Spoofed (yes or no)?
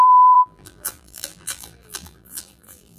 yes